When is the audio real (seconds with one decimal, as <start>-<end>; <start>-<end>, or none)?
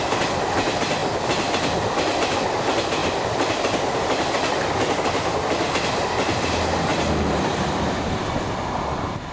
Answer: 0.0-3.0; 6.0-6.9; 8.5-9.3